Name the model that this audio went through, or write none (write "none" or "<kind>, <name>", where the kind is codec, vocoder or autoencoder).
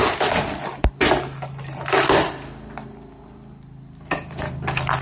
vocoder, BigVGAN v2